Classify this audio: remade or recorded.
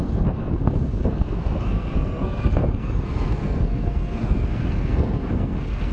remade